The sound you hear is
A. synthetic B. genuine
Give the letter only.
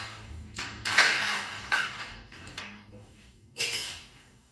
A